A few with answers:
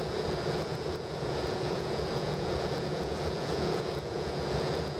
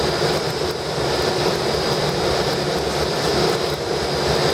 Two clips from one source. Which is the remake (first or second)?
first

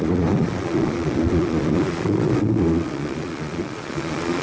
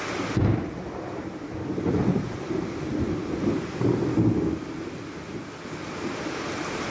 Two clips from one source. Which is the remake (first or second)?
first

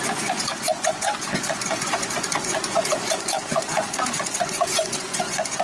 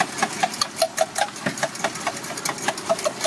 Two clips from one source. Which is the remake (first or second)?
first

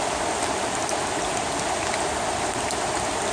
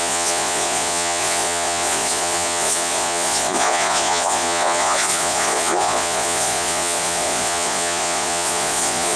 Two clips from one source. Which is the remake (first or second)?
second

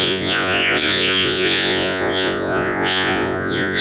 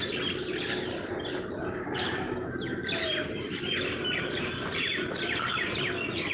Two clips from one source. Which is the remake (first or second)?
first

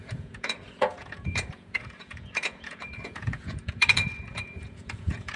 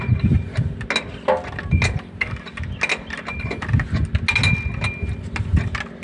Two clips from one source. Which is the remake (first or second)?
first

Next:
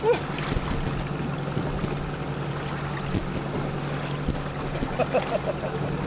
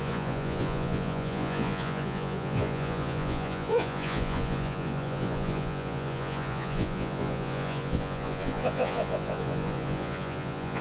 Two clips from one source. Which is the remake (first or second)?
second